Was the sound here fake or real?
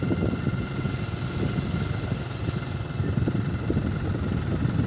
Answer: real